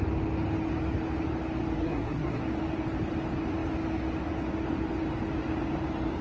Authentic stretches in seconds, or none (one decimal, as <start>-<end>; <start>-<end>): 0.0-1.8; 2.4-6.2